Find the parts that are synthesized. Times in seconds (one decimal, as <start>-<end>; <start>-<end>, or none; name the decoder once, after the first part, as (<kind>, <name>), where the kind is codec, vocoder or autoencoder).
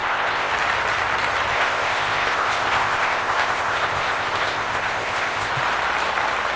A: 0.0-0.5 (codec, ZipCodec); 1.5-5.5